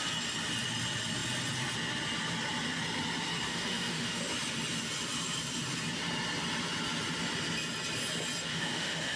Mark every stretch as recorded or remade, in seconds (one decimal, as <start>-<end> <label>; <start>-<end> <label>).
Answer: 0.0-3.5 recorded; 3.5-4.2 remade; 4.2-8.5 recorded; 8.5-9.2 remade